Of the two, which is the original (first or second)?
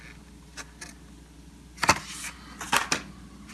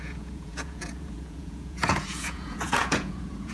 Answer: first